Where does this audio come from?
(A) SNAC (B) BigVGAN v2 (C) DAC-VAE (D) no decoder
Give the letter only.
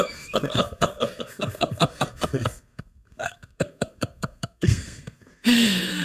A